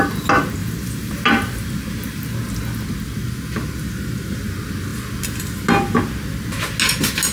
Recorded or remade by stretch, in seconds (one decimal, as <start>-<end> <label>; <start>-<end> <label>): 0.0-0.6 recorded; 0.6-2.2 remade; 2.2-7.3 recorded